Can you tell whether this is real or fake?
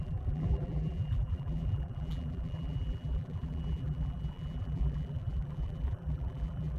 fake